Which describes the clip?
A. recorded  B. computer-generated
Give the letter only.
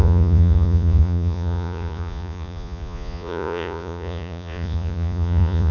B